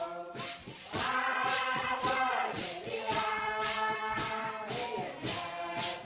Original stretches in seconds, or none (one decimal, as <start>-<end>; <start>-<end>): 0.0-0.6; 4.2-6.0